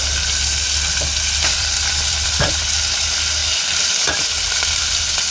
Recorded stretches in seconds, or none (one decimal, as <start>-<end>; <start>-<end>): 0.0-1.6; 2.6-5.3